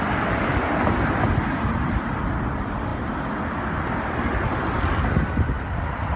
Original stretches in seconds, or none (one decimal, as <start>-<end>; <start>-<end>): 0.0-6.2